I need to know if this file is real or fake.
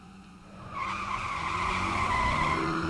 fake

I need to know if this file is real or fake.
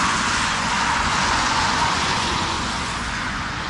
fake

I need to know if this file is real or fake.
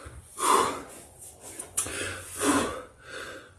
fake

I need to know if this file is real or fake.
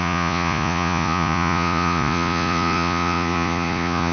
fake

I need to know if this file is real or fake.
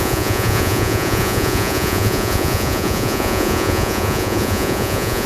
fake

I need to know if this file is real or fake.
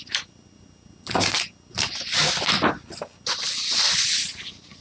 real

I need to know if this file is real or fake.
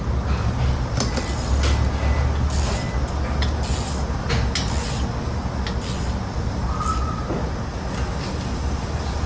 real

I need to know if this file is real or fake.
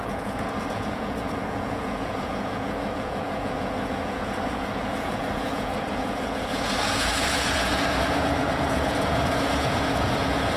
fake